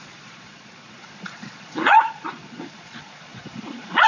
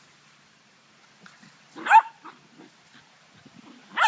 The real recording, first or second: second